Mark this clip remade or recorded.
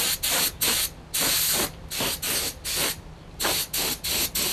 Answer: recorded